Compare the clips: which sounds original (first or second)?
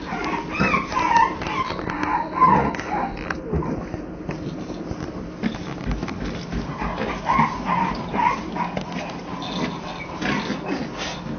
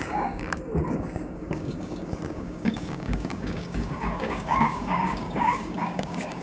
first